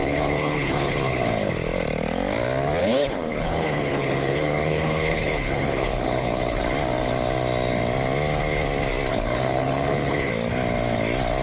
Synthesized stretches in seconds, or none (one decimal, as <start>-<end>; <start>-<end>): 0.0-1.5; 2.8-6.6; 9.1-10.3